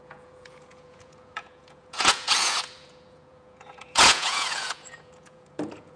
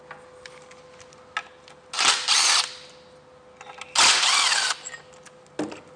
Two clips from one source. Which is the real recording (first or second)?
second